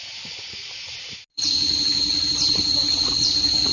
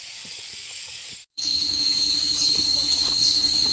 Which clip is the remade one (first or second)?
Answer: second